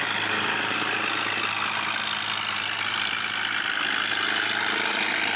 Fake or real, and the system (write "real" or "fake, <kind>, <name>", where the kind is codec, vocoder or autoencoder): real